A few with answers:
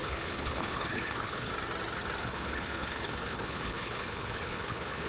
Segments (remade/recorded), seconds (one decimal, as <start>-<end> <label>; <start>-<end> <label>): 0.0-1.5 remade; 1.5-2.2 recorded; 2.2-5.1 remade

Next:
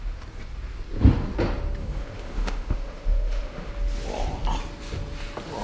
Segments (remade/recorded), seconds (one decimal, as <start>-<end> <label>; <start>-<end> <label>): 0.0-1.8 recorded; 1.8-3.7 remade; 3.7-5.6 recorded

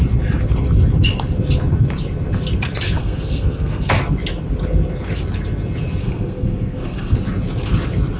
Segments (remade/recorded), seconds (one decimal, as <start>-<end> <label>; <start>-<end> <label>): 0.0-3.0 recorded; 3.0-4.0 remade; 4.0-6.0 recorded; 6.0-7.2 remade; 7.2-8.2 recorded

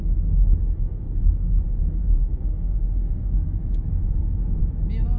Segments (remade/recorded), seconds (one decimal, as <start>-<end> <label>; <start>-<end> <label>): 0.0-4.6 remade; 4.6-5.2 recorded

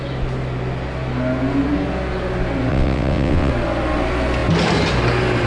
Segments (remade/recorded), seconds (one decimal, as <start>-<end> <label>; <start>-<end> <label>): 0.0-2.7 recorded; 2.7-3.5 remade; 3.5-5.5 recorded

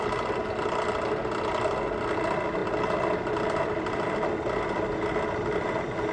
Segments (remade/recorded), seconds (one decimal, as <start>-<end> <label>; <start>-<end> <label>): 0.0-6.1 recorded